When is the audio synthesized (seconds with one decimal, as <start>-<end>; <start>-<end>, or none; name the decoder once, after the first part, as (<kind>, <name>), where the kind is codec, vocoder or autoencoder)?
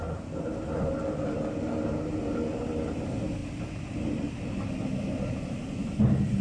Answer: 3.4-4.3 (vocoder, BigVGAN v2)